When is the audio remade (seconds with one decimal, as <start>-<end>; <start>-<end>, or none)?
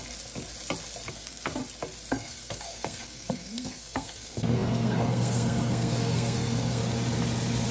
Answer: 1.1-1.6; 2.1-6.8